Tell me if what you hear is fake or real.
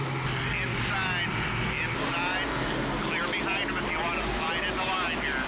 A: real